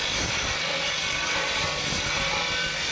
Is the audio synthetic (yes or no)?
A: no